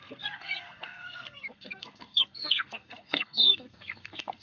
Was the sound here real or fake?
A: fake